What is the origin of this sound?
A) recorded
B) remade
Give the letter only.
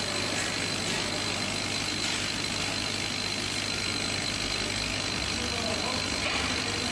A